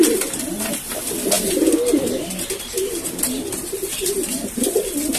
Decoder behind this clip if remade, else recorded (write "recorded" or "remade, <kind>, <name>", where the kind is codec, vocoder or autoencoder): remade, vocoder, BigVGAN v2